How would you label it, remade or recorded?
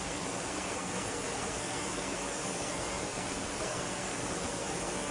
remade